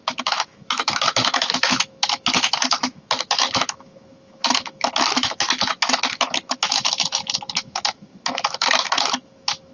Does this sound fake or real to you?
fake